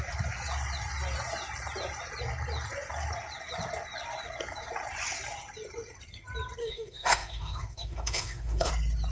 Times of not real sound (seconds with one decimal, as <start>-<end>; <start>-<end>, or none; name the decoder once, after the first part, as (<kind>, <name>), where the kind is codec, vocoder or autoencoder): 6.6-8.7 (autoencoder, DAC-VAE)

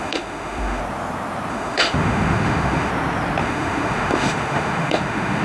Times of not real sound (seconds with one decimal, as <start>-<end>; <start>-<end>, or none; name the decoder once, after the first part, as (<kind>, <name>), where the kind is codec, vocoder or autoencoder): 0.0-0.8 (autoencoder, DAC-VAE); 1.5-2.9; 3.4-5.4

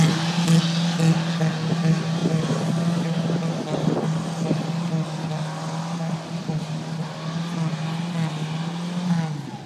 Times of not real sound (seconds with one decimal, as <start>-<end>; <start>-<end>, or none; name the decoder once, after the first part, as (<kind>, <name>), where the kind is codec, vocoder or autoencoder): none

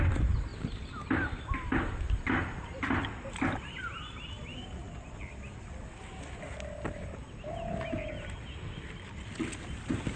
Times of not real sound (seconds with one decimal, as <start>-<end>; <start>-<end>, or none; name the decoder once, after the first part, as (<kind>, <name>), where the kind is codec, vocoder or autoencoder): none

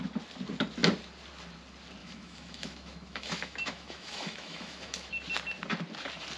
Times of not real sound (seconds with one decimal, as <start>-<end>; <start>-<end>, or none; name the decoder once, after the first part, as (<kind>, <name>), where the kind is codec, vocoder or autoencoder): 2.0-5.1 (autoencoder, DAC-VAE)

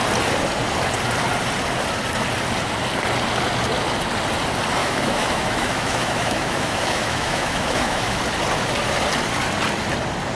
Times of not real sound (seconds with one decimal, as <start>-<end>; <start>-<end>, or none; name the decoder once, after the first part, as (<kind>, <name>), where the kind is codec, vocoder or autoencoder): 4.8-8.2 (autoencoder, DAC-VAE)

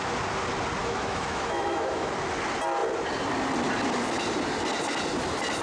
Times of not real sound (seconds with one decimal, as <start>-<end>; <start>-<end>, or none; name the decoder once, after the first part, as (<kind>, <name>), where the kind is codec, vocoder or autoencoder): 0.8-2.1 (autoencoder, DAC-VAE)

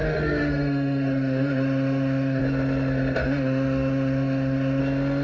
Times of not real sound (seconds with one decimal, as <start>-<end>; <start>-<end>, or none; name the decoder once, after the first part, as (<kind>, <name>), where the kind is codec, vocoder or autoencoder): 0.0-2.4 (autoencoder, DAC-VAE); 3.2-4.8